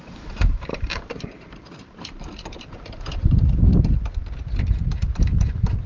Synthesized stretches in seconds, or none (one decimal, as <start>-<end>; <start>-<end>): 0.0-3.7; 4.5-5.9